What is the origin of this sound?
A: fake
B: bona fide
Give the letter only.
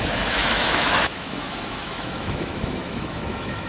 A